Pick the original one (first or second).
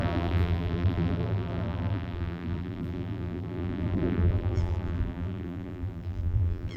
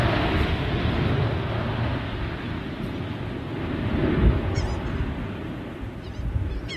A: second